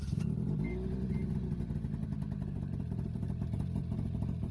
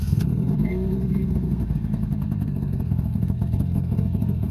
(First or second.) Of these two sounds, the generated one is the second